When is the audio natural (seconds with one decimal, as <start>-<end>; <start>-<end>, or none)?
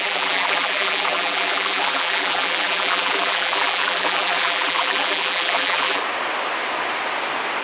6.0-7.6